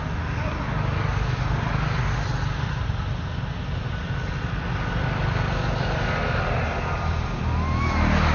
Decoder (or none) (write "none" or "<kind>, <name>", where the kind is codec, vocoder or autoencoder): none